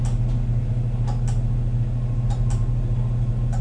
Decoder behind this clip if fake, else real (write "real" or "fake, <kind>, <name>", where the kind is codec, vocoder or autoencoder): real